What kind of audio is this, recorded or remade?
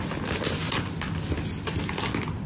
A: recorded